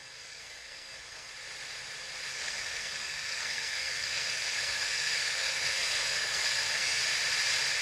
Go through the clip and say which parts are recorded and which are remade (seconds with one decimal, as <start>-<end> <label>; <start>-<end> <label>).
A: 0.0-1.3 remade; 1.3-2.3 recorded; 2.3-7.0 remade; 7.0-7.8 recorded